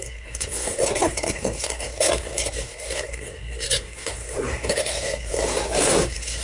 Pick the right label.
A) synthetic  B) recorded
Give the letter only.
A